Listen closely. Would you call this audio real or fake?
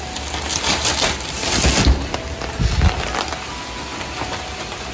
real